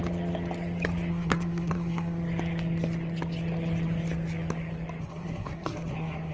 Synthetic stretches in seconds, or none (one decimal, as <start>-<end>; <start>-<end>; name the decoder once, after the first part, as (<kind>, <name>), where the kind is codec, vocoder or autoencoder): 1.1-2.2 (codec, SNAC); 5.0-6.3